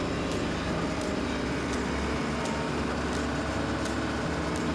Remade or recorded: recorded